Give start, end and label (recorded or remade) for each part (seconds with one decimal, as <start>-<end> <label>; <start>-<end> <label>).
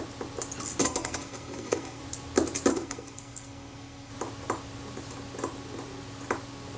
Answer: 0.0-0.8 recorded; 0.8-2.0 remade; 2.0-2.7 recorded; 2.7-4.1 remade; 4.1-6.8 recorded